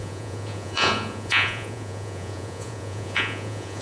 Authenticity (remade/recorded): remade